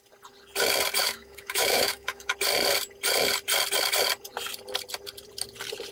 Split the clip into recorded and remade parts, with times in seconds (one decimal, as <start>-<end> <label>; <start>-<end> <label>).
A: 0.0-1.0 recorded; 1.0-2.3 remade; 2.3-5.9 recorded